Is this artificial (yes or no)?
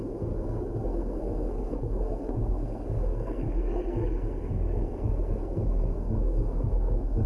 yes